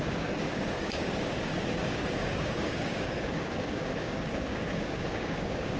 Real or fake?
fake